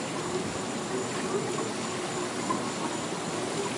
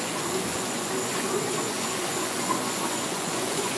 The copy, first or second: second